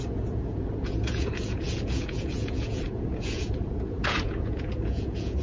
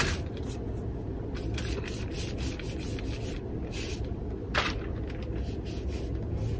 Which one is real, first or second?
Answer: second